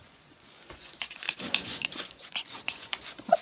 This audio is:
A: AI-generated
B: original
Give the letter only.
A